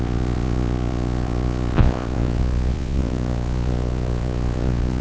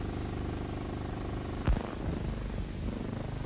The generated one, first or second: first